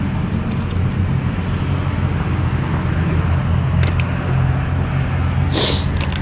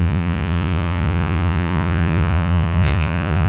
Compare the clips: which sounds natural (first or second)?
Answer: first